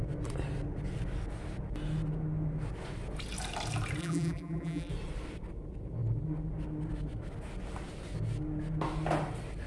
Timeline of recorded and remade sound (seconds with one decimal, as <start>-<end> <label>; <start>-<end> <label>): 0.0-4.0 recorded; 4.0-4.9 remade; 4.9-9.7 recorded